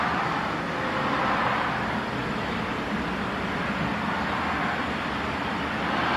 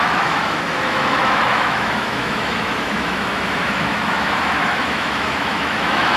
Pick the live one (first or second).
first